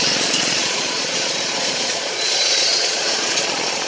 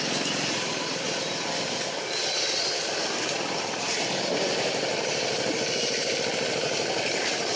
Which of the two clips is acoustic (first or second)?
second